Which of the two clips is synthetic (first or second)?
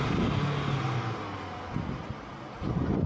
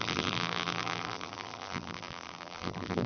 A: second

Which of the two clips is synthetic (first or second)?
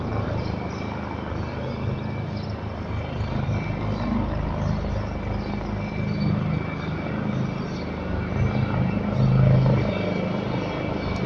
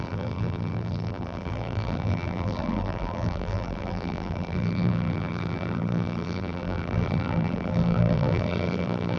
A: second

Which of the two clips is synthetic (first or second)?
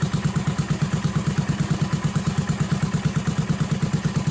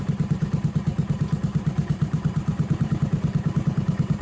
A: second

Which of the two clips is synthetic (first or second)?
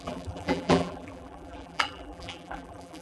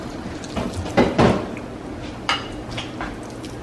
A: first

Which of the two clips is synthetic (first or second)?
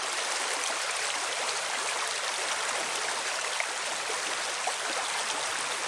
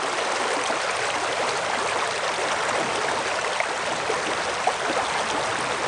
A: first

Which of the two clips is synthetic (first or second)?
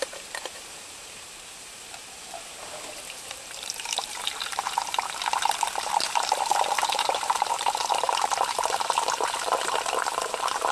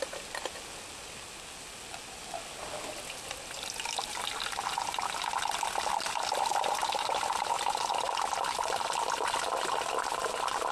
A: first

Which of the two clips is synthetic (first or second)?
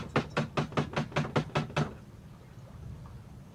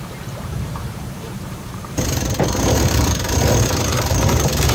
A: second